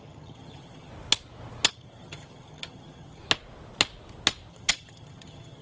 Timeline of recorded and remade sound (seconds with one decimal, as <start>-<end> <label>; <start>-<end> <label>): 0.0-0.9 remade; 0.9-1.7 recorded; 1.7-3.2 remade; 3.2-4.5 recorded; 4.5-5.6 remade